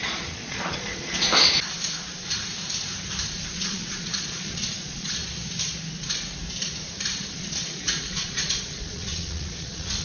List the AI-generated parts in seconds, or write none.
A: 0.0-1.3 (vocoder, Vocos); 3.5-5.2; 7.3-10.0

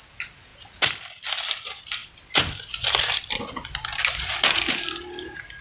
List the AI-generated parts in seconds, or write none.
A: none

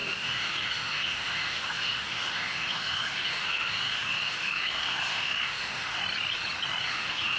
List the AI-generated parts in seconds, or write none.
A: 0.0-6.0 (autoencoder, DAC-VAE); 6.8-7.4

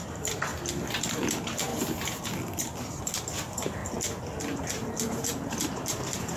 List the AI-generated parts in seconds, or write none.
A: 0.0-0.5 (vocoder, BigVGAN v2); 1.1-1.7; 3.0-3.8; 4.4-6.4

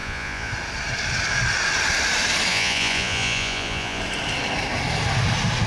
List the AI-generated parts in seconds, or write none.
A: 0.0-0.5 (vocoder, Vocos); 2.5-4.0

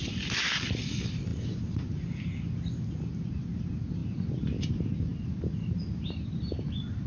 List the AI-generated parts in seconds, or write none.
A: none

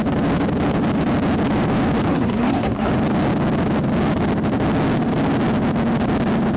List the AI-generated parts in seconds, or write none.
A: 2.1-2.9 (codec, SNAC)

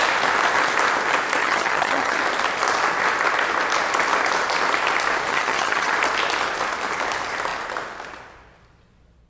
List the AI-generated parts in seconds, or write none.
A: 1.4-2.2 (vocoder, HiFi-GAN); 5.3-5.9